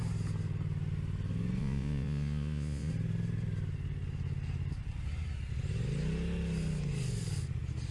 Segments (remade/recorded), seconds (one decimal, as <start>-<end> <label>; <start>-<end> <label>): 0.0-1.6 recorded; 1.6-2.9 remade; 2.9-7.9 recorded